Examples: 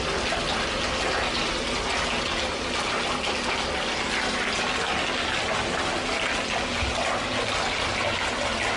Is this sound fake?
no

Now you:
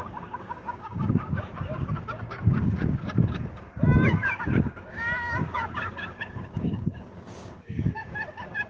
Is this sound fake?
yes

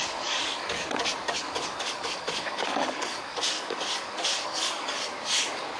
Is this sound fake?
yes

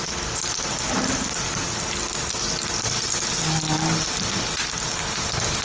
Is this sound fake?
no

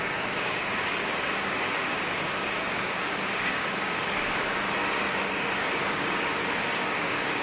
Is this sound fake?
yes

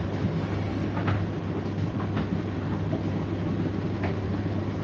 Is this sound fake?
no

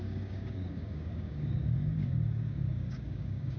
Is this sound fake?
yes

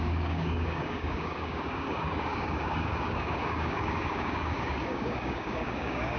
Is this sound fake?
yes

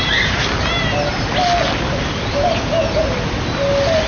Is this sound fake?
no